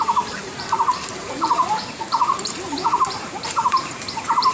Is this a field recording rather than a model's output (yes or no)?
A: no